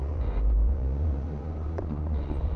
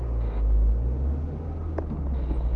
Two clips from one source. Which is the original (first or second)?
second